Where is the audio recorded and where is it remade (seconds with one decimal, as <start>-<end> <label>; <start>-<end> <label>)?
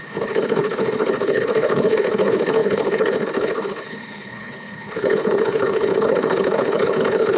0.0-7.4 remade